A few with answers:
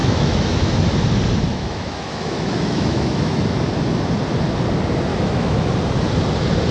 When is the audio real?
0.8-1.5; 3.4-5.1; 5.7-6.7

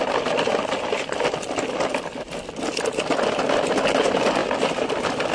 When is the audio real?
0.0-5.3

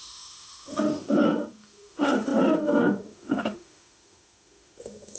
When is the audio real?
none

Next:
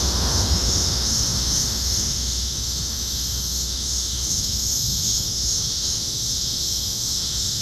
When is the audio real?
none

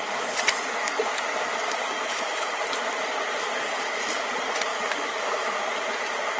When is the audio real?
0.0-0.8; 2.5-4.7; 5.6-6.4

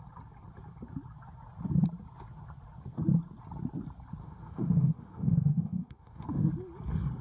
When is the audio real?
0.0-4.2; 6.5-7.2

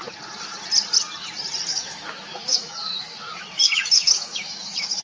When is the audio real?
0.0-1.7

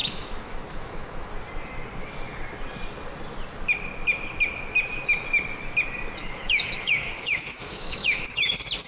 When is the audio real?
1.3-6.2; 8.5-8.9